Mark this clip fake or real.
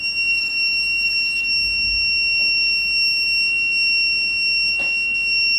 real